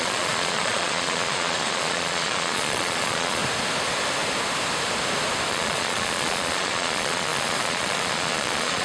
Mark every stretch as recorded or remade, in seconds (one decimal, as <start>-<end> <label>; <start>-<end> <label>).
0.0-3.4 remade; 3.4-5.5 recorded; 5.5-8.8 remade